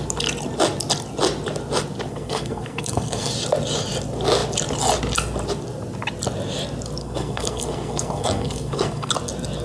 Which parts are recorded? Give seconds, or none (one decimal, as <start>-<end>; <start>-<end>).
0.0-2.1; 3.3-7.0; 9.1-9.6